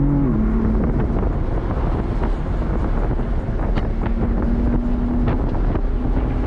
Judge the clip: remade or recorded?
recorded